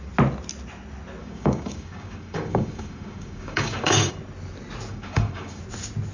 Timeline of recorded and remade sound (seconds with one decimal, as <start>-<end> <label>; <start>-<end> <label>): 0.0-1.2 recorded; 1.2-4.1 remade; 4.1-4.9 recorded; 4.9-5.6 remade; 5.6-6.1 recorded